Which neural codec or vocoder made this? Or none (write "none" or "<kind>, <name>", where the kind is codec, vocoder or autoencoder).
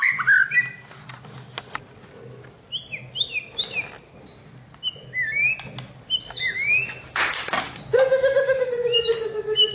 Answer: none